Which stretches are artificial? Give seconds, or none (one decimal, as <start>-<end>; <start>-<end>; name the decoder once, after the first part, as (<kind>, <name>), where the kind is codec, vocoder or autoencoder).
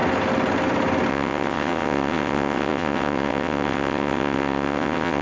1.1-5.2 (vocoder, WaveNeXt)